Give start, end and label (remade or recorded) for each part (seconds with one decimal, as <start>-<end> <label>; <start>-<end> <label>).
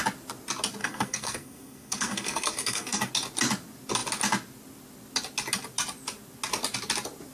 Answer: 0.0-0.8 recorded; 0.8-3.1 remade; 3.1-7.3 recorded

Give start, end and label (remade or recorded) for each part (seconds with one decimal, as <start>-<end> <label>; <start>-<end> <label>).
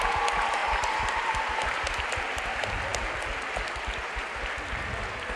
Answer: 0.0-5.4 recorded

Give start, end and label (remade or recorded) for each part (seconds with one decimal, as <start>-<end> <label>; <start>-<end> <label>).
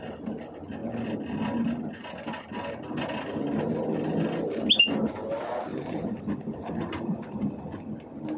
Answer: 0.0-5.7 recorded; 5.7-7.8 remade; 7.8-8.4 recorded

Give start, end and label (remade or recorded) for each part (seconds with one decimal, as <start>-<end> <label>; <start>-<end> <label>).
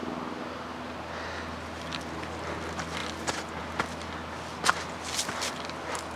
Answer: 0.0-6.2 recorded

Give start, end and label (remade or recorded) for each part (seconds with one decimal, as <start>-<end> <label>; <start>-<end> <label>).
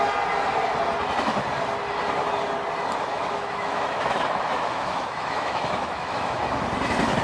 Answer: 0.0-3.1 recorded; 3.1-6.4 remade; 6.4-7.2 recorded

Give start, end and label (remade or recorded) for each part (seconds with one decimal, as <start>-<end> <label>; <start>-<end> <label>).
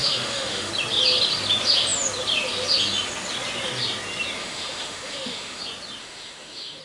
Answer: 0.0-0.7 remade; 0.7-4.4 recorded; 4.4-5.6 remade; 5.6-6.0 recorded; 6.0-6.8 remade